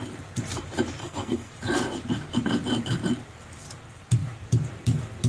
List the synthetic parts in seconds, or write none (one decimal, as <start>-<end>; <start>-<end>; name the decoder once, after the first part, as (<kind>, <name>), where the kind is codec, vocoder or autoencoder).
1.0-1.5 (codec, SNAC)